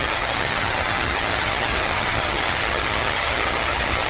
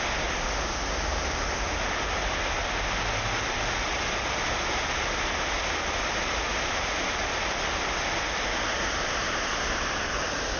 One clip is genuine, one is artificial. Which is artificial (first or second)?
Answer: first